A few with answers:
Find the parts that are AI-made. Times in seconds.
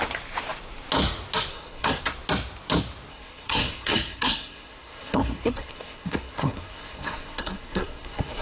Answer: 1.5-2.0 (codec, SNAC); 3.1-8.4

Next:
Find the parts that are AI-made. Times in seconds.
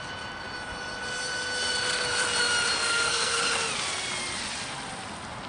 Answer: 2.8-3.4 (codec, SNAC)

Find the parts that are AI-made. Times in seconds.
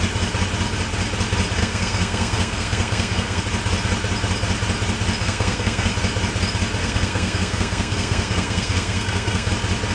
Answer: 1.6-3.4 (codec, SNAC); 5.2-5.9; 6.8-9.5